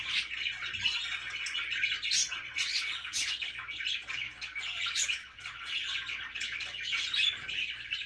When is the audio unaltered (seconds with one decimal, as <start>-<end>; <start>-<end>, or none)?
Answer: 0.0-2.2; 3.3-5.2; 5.9-8.1